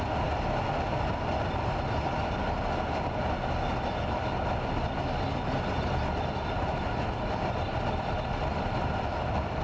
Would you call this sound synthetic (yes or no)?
no